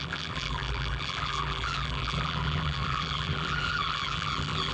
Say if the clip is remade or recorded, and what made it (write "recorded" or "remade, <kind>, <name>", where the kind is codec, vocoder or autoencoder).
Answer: remade, vocoder, BigVGAN v2